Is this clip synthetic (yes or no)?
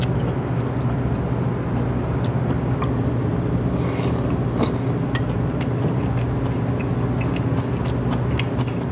no